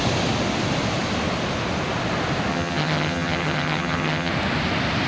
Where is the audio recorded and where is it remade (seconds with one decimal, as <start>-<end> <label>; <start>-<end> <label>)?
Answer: 0.0-2.5 recorded; 2.5-4.3 remade; 4.3-5.1 recorded